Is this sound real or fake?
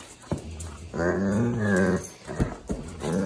real